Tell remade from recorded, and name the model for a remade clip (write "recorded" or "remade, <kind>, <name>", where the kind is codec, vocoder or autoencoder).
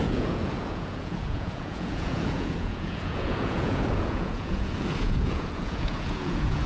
remade, vocoder, Vocos